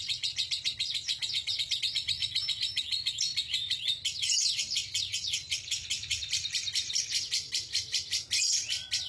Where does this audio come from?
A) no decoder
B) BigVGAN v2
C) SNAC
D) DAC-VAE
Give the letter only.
A